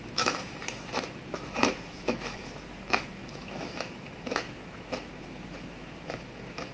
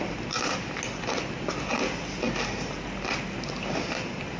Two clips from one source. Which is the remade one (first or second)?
first